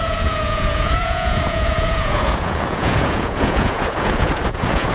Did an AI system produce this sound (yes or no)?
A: yes